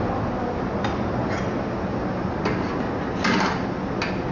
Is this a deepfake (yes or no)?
no